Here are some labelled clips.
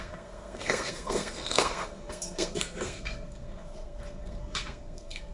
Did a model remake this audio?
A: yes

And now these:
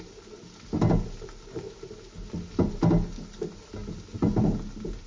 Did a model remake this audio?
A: no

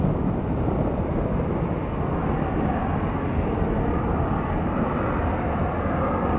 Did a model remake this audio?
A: no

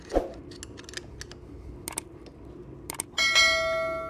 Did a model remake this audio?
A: no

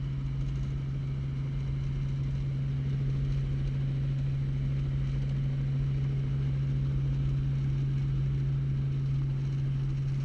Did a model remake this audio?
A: no